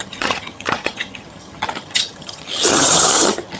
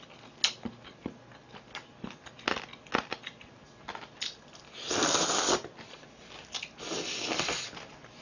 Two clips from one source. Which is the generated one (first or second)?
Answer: first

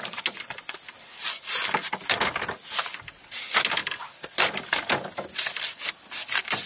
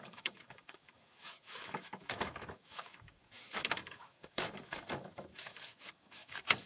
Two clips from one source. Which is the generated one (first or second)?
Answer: second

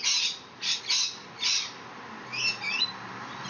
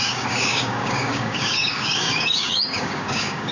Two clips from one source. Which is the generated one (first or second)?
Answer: second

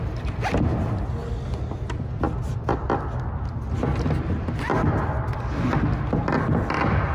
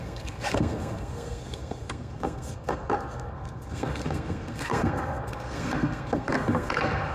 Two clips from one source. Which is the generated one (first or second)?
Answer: second